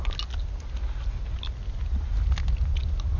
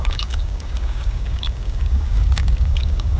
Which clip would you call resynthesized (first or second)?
second